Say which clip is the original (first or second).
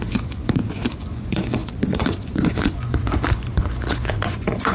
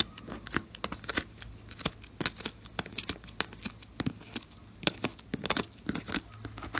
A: second